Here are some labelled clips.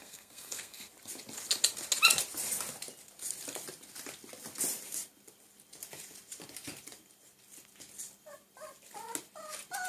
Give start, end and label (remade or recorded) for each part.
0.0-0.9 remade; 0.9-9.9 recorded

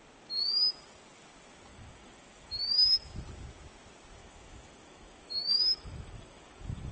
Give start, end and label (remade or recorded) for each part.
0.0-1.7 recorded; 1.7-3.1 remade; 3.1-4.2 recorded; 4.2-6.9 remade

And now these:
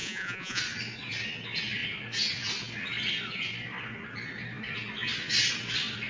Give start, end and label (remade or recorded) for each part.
0.0-0.6 remade; 0.6-6.1 recorded

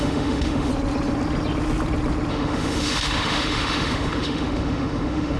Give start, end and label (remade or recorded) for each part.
0.0-0.7 remade; 0.7-2.3 recorded; 2.3-5.4 remade

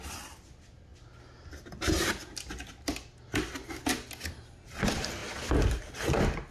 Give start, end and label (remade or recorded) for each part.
0.0-6.5 recorded

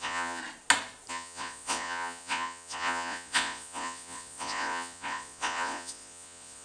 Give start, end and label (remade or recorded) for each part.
0.0-0.4 remade; 0.4-1.1 recorded; 1.1-6.6 remade

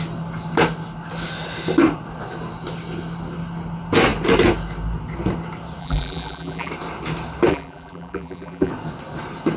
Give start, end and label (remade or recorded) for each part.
0.0-5.8 recorded; 5.8-6.7 remade; 6.7-7.5 recorded; 7.5-8.7 remade; 8.7-9.6 recorded

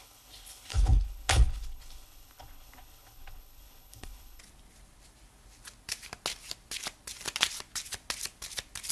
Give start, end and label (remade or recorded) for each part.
0.0-4.4 remade; 4.4-8.9 recorded